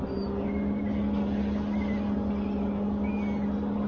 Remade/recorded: recorded